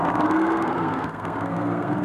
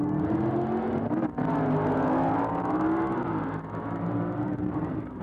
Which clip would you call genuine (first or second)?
second